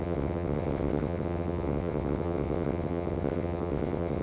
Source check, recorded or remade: remade